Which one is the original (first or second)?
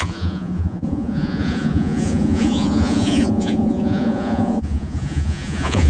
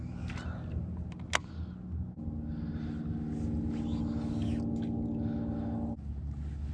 second